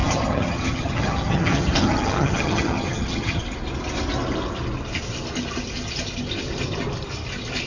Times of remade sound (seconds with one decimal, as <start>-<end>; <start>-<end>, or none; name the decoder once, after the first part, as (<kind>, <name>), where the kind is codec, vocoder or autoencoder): 0.0-3.4 (vocoder, HiFi-GAN)

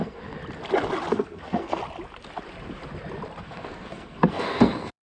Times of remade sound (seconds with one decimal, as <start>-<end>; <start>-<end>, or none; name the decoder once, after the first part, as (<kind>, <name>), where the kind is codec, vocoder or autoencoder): 0.0-0.4 (codec, SNAC); 1.1-1.8; 3.4-5.0

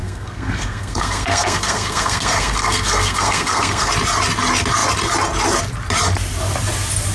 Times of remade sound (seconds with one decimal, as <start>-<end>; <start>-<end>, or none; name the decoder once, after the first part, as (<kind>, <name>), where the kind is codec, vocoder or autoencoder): 0.0-3.9 (codec, SNAC)

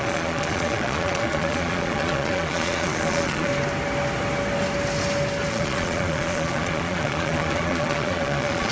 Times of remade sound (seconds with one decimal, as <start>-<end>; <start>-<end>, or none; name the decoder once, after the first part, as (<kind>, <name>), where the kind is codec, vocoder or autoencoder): 0.0-3.5 (vocoder, Vocos); 5.5-8.7

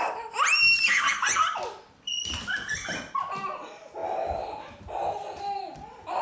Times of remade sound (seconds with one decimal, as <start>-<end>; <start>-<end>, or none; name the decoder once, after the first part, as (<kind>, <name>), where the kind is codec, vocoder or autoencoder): none

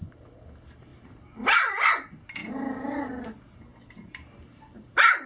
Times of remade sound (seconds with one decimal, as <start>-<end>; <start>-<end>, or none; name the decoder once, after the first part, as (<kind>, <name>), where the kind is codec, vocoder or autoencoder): 0.9-1.7 (vocoder, BigVGAN v2); 2.4-3.1; 3.7-5.3

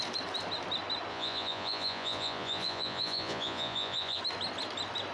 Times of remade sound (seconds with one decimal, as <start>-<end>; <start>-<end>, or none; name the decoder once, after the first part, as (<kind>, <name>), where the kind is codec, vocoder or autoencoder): 1.1-4.2 (vocoder, Vocos)